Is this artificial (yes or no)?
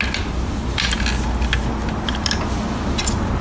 no